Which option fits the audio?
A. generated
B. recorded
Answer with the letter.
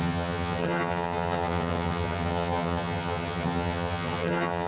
A